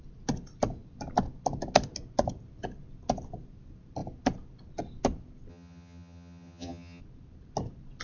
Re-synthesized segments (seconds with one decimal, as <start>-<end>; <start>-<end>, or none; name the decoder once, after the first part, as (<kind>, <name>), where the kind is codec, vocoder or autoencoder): 5.5-7.0 (vocoder, HiFi-GAN)